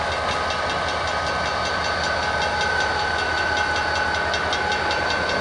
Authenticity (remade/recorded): recorded